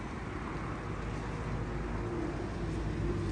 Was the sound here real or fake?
real